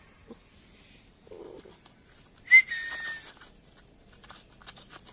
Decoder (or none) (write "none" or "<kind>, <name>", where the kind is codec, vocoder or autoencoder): none